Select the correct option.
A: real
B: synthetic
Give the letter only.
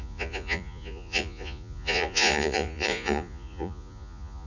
B